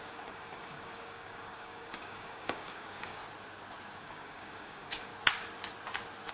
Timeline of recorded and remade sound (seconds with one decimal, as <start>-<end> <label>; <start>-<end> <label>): 0.0-3.2 remade; 3.2-4.0 recorded; 4.0-5.1 remade; 5.1-6.3 recorded